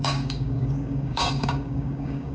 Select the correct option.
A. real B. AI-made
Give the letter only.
B